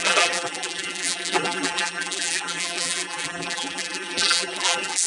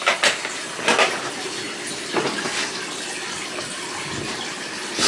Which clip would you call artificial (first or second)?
first